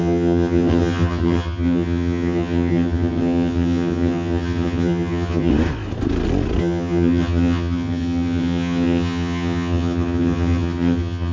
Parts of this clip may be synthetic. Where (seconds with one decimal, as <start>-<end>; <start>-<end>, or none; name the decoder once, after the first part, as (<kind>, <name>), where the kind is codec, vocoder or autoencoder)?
0.0-5.5 (vocoder, HiFi-GAN); 6.6-11.3